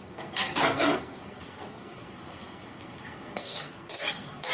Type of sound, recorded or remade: remade